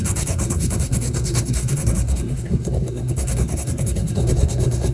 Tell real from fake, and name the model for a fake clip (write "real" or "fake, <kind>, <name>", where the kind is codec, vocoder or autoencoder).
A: fake, codec, SNAC